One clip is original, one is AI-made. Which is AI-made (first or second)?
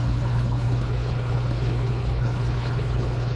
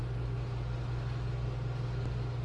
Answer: first